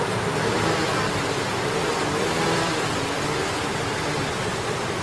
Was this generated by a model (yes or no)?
yes